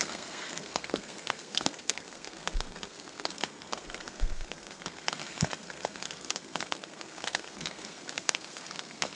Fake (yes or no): yes